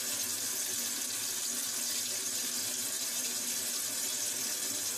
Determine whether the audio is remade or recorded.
remade